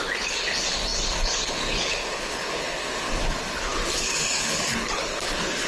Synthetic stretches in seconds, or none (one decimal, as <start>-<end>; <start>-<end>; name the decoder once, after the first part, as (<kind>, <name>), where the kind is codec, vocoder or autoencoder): 0.0-5.7 (codec, HILCodec)